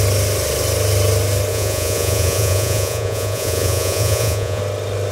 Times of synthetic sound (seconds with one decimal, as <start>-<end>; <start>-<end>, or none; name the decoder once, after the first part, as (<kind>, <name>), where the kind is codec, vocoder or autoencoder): 1.5-4.6 (vocoder, Vocos)